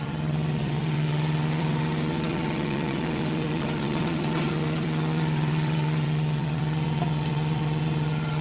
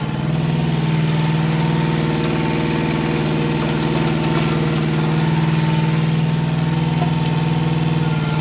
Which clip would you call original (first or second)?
second